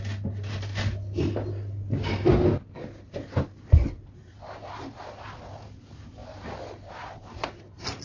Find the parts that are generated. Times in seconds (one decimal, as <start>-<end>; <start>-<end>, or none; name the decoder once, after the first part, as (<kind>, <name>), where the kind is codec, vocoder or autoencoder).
none